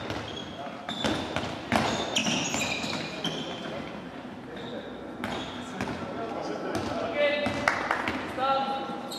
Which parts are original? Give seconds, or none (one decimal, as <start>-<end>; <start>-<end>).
0.0-9.2